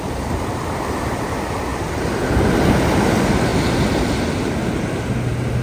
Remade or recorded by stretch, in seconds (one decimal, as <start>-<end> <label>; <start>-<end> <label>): 0.0-5.6 recorded